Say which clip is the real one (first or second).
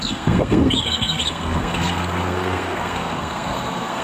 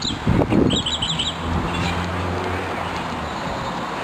second